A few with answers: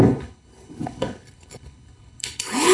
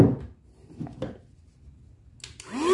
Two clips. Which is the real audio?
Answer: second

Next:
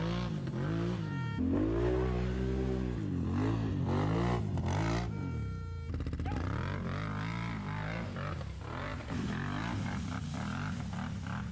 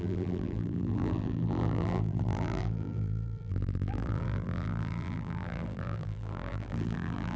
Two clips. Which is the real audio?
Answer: first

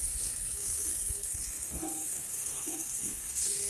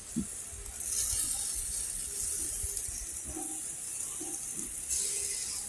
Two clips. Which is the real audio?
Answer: second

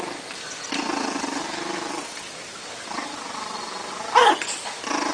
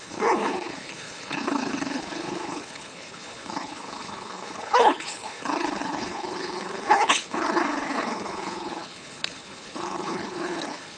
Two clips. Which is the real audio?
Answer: first